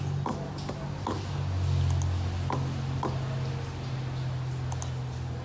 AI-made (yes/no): no